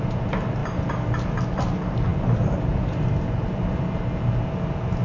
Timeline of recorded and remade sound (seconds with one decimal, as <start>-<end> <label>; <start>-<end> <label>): 0.0-5.0 recorded